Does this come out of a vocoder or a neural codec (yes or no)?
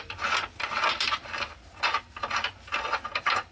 no